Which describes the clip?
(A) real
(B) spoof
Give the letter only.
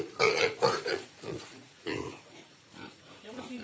B